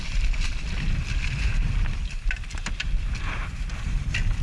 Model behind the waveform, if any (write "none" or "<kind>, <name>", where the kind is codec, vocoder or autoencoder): none